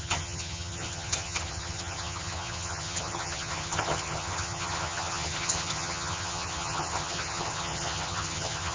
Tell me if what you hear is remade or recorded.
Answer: remade